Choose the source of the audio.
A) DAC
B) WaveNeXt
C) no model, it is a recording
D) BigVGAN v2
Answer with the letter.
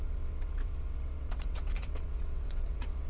B